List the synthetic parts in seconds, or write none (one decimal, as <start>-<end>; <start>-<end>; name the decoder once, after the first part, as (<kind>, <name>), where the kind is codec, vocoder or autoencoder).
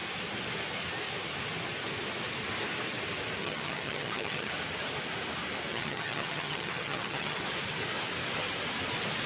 3.4-4.5 (vocoder, HiFi-GAN); 5.7-7.4